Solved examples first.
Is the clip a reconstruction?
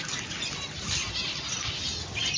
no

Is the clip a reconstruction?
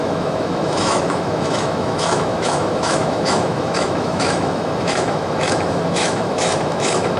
yes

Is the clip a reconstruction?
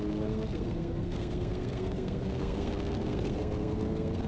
yes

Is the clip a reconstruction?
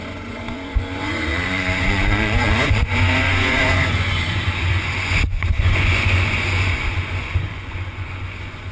yes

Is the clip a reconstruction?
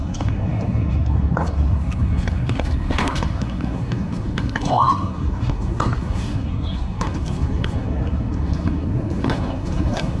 yes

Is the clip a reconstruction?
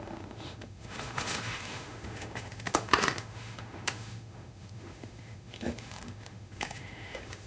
yes